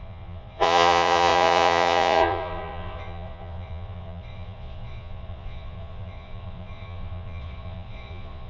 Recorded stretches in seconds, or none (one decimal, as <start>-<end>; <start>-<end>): none